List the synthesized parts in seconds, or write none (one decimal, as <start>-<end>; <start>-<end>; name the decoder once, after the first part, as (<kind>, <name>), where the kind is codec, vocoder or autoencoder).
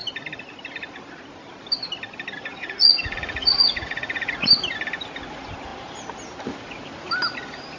2.5-4.5 (vocoder, Vocos)